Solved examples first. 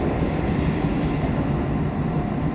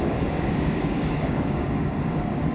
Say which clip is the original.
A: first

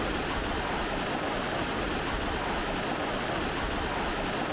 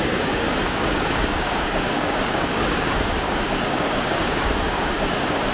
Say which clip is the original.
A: first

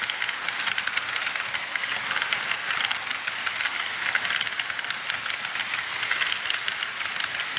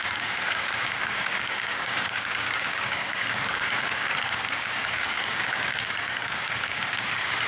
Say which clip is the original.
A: first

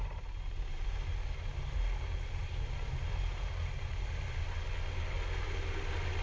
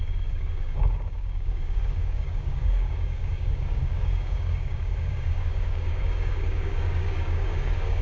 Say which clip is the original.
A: first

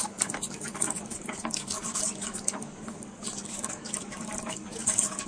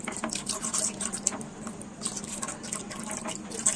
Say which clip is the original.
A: second